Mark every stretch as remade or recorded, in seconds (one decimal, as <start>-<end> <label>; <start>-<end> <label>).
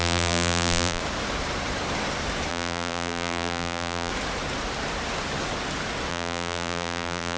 0.0-1.0 remade; 1.0-2.5 recorded; 2.5-4.1 remade; 4.1-6.1 recorded; 6.1-7.4 remade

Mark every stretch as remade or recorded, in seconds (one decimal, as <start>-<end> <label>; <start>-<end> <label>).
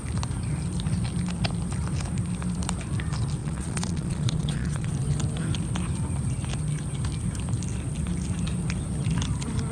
0.0-3.4 recorded; 3.4-4.9 remade; 4.9-9.7 recorded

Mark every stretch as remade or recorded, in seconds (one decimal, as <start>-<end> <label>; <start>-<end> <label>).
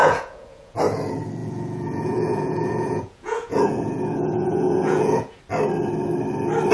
0.0-0.8 remade; 0.8-1.4 recorded; 1.4-5.4 remade; 5.4-6.7 recorded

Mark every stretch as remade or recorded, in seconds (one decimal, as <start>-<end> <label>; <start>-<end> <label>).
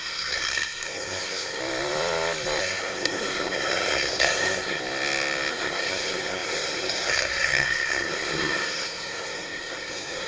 0.0-1.6 remade; 1.6-2.6 recorded; 2.6-4.8 remade; 4.8-5.5 recorded; 5.5-10.3 remade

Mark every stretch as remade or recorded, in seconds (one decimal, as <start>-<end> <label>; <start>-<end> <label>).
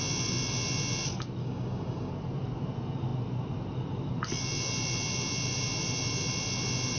0.0-1.4 recorded; 1.4-2.1 remade; 2.1-7.0 recorded